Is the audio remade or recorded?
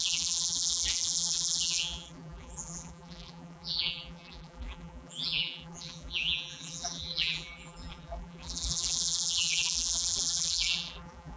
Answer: remade